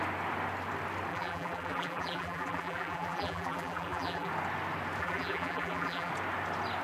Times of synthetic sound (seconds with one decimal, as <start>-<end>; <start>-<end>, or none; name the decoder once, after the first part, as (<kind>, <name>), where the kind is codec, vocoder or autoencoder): 1.1-4.3 (vocoder, BigVGAN v2); 5.0-6.1